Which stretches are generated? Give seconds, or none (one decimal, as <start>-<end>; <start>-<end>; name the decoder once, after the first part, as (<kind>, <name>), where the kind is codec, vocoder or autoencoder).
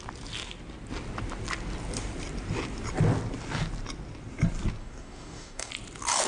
4.8-5.7 (codec, DAC)